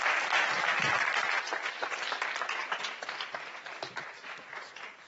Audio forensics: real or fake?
real